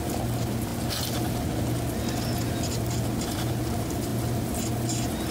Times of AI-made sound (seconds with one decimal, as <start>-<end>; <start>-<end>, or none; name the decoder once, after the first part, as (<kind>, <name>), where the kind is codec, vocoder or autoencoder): none